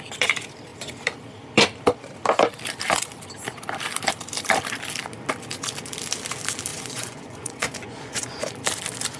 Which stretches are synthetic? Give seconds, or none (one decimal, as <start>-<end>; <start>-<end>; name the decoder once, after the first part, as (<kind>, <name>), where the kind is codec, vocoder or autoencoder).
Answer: 6.7-8.4 (vocoder, Vocos)